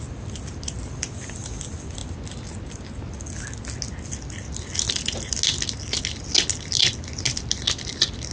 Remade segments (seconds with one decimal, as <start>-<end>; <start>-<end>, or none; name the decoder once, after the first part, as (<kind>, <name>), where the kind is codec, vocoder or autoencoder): none